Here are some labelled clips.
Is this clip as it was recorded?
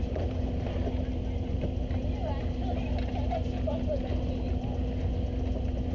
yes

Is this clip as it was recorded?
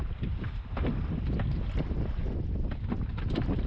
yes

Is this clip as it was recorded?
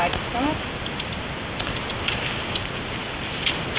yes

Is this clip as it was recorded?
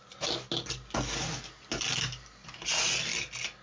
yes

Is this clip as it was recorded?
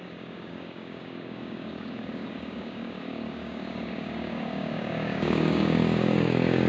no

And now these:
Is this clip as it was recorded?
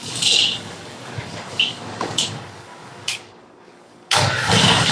no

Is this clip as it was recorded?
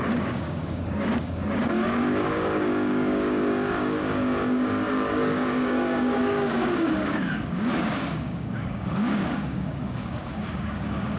no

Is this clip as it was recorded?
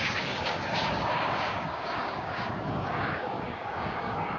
no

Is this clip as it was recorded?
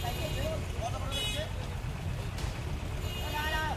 yes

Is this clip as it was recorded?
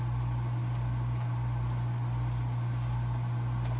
yes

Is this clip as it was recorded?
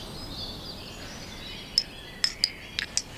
yes